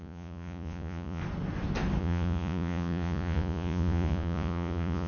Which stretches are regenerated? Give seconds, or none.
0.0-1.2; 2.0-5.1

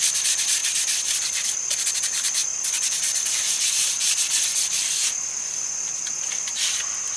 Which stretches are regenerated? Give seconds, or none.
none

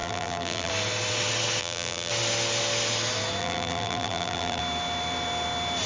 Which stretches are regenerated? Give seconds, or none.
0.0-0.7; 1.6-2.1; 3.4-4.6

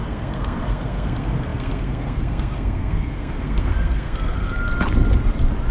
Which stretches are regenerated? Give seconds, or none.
0.0-4.7

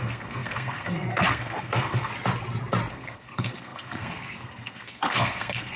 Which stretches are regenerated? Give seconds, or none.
0.0-2.1; 2.9-5.8

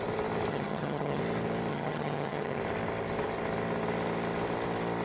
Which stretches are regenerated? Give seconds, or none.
0.5-1.2; 1.7-2.6